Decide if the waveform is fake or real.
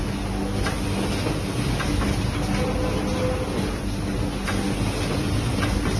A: real